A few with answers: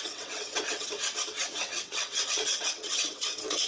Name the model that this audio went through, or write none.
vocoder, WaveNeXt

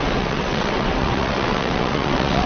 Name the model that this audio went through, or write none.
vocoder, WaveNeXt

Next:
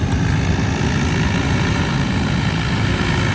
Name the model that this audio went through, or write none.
none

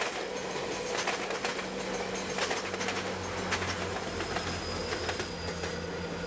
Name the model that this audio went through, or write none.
none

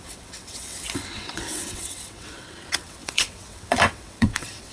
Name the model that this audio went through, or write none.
vocoder, WaveNeXt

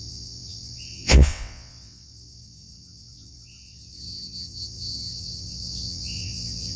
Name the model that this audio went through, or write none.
vocoder, WaveNeXt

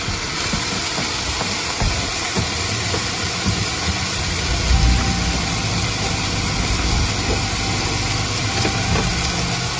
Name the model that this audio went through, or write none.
none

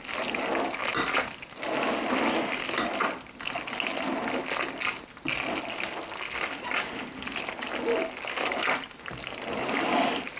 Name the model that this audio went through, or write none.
none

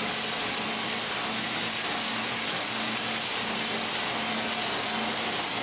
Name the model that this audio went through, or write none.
none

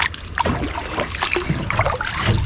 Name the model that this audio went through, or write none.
none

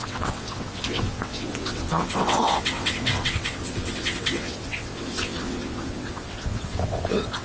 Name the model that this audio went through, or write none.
vocoder, WaveNeXt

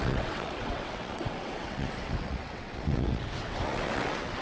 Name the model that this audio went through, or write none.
vocoder, WaveNeXt